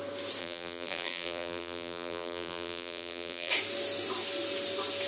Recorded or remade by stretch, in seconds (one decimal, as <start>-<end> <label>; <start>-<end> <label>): 0.0-0.4 recorded; 0.4-3.5 remade; 3.5-5.1 recorded